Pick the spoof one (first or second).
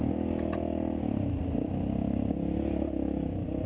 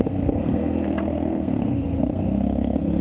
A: second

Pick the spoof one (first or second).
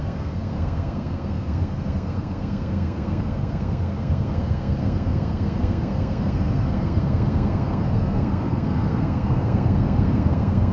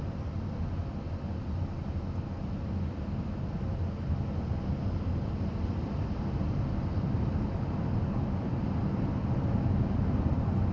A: first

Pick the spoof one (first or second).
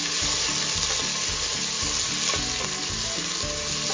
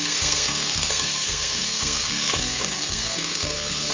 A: second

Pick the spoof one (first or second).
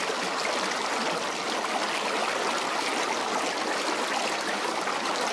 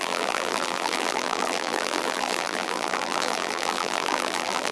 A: second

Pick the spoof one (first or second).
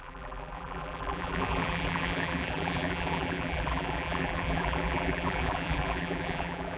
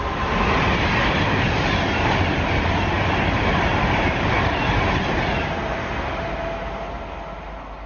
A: first